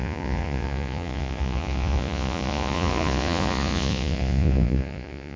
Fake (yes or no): yes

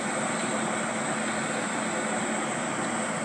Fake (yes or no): no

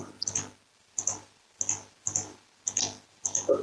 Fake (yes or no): no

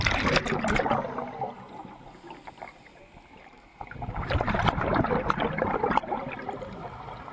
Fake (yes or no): no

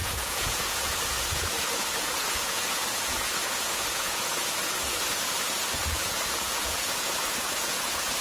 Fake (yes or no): yes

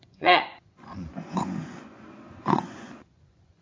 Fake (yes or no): yes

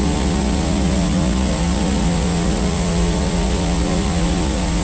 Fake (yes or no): yes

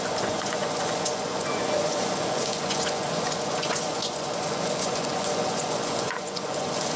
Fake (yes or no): yes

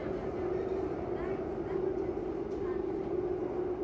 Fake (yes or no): no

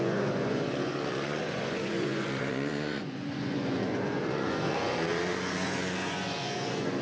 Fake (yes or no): yes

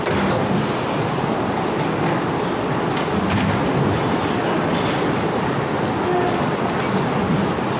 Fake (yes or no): no